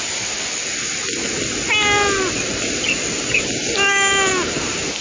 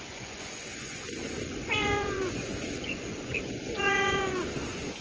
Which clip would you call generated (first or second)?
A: second